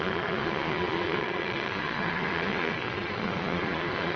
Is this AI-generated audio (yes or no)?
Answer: yes